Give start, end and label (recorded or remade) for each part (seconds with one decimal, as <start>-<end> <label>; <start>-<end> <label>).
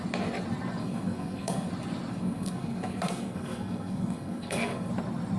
0.0-0.8 recorded; 0.8-1.7 remade; 1.7-2.1 recorded; 2.1-4.9 remade; 4.9-5.4 recorded